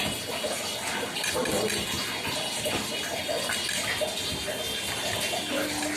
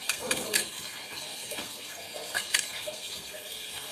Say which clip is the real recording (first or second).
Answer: first